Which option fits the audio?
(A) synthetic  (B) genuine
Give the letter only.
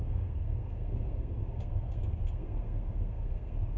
A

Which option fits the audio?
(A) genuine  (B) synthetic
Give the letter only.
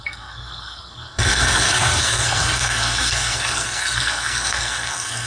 B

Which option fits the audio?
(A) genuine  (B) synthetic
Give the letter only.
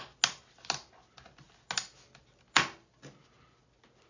A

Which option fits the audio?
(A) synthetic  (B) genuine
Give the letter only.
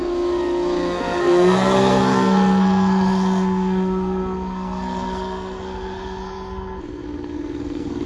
A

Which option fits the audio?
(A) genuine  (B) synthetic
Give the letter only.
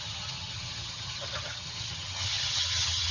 B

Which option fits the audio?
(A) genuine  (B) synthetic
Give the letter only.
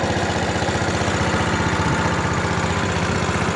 A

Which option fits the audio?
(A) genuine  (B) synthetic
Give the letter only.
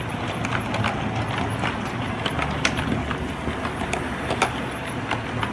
A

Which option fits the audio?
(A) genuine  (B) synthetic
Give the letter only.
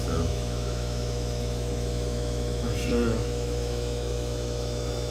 B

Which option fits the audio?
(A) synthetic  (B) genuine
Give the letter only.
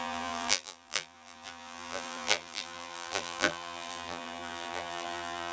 A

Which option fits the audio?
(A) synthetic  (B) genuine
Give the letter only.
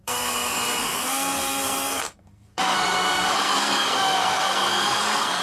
A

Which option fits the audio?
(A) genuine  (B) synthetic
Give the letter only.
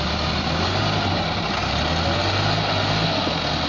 A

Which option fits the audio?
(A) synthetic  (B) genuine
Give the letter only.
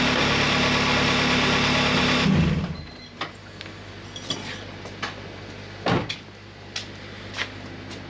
B